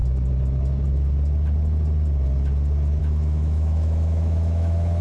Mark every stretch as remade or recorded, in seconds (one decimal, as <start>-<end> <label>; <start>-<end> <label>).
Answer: 0.0-3.0 recorded; 3.0-5.0 remade